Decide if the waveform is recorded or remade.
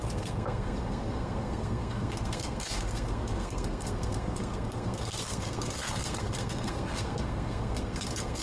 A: remade